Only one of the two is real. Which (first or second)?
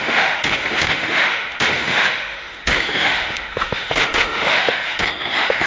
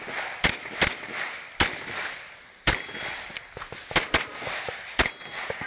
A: second